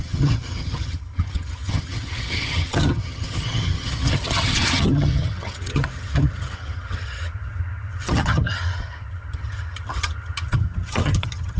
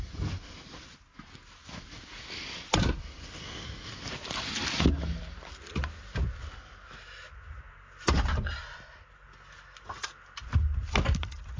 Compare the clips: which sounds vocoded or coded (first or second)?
first